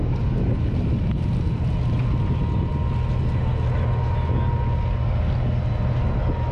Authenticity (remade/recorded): recorded